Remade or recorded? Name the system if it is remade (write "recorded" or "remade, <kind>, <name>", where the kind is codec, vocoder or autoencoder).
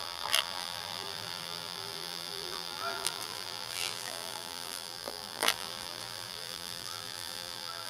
remade, vocoder, BigVGAN v2